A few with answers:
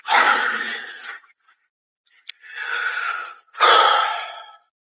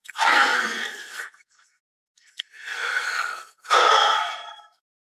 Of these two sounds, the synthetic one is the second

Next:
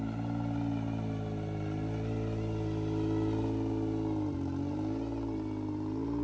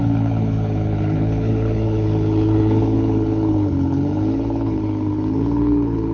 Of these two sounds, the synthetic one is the second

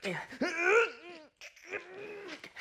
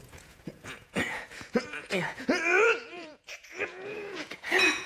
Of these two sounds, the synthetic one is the second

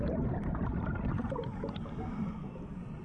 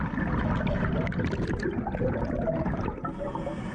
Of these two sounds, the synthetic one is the first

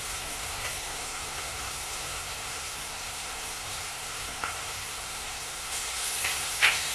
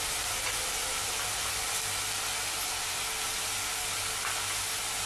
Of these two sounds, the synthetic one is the first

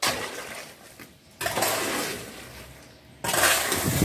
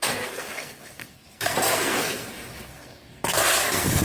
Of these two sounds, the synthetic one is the second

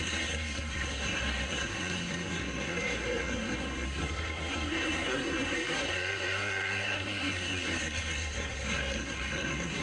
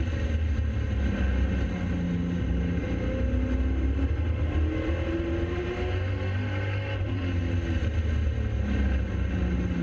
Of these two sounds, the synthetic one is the first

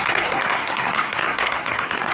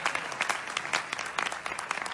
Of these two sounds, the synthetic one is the first